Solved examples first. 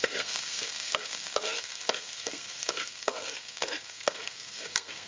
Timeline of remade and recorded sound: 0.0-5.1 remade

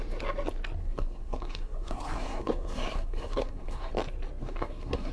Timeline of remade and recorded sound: 0.0-0.8 recorded; 0.8-3.9 remade; 3.9-4.4 recorded; 4.4-5.1 remade

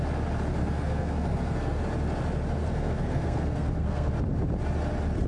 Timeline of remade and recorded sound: 0.0-0.6 recorded; 0.6-1.8 remade; 1.8-2.6 recorded; 2.6-4.1 remade; 4.1-5.3 recorded